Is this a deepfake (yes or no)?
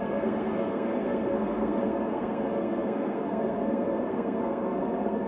yes